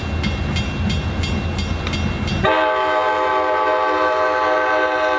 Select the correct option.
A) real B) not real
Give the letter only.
A